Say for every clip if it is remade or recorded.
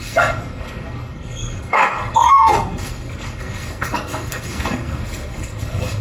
remade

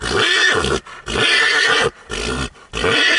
recorded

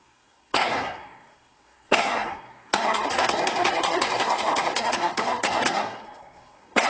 remade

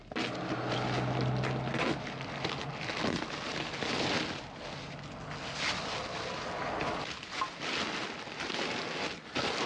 recorded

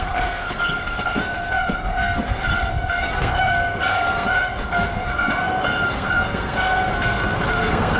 remade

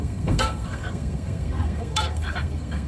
remade